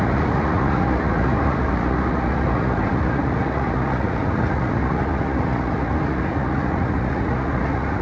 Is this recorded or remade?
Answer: remade